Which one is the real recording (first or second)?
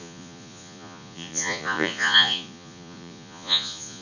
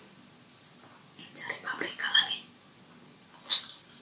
second